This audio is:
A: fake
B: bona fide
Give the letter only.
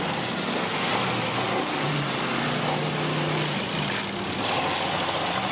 B